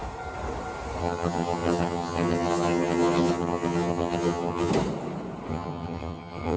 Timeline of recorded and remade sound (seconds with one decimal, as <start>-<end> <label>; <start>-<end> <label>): 0.0-1.0 recorded; 1.0-4.7 remade; 4.7-5.5 recorded; 5.5-6.6 remade